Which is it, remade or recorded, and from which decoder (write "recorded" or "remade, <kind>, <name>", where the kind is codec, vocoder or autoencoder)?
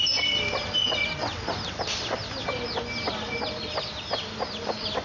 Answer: recorded